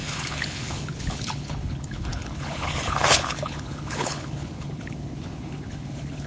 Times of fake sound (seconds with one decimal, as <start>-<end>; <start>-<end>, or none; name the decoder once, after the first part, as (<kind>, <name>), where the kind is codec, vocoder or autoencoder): 0.0-6.3 (codec, HILCodec)